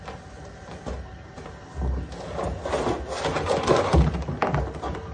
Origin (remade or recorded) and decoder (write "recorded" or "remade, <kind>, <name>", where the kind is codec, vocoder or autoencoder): recorded